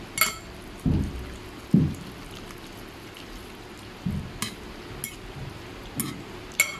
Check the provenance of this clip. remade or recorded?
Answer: recorded